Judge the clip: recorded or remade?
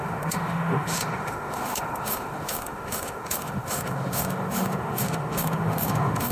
remade